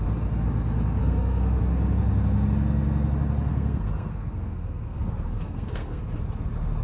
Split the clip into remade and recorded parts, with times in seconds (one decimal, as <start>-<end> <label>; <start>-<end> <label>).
0.0-1.0 recorded; 1.0-1.6 remade; 1.6-3.5 recorded; 3.5-6.0 remade; 6.0-6.8 recorded